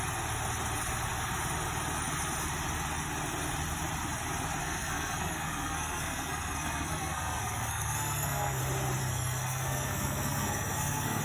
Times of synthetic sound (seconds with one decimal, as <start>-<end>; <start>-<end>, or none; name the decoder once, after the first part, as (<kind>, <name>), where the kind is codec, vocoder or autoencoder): 4.6-8.6 (codec, SNAC); 9.0-11.2